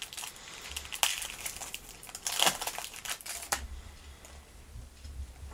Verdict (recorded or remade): recorded